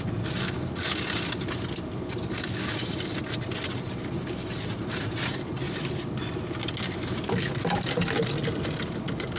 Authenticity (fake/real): real